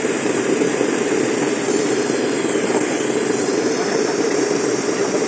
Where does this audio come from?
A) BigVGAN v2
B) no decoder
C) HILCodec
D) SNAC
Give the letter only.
A